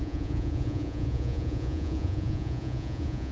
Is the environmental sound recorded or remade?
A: remade